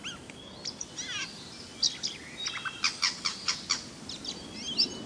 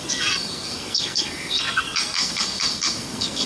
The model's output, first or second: second